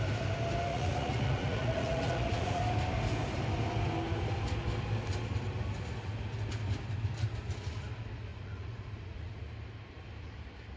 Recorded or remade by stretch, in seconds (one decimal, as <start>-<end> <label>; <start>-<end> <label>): 0.0-0.7 recorded; 0.7-2.6 remade; 2.6-8.3 recorded; 8.3-9.4 remade; 9.4-10.8 recorded